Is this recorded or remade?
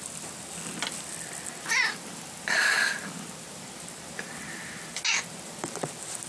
recorded